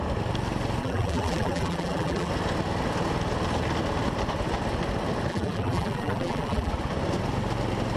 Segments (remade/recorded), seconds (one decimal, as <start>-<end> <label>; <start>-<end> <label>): 0.0-0.8 recorded; 0.8-2.3 remade; 2.3-5.3 recorded; 5.3-6.7 remade; 6.7-8.0 recorded